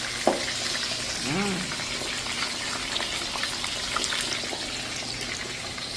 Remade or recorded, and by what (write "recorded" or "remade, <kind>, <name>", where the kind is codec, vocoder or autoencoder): recorded